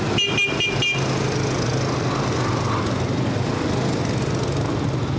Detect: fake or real real